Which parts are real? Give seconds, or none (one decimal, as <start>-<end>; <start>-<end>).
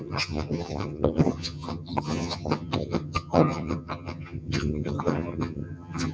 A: none